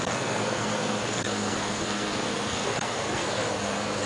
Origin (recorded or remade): remade